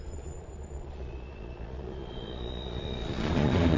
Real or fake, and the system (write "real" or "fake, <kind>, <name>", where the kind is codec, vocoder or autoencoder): fake, vocoder, Vocos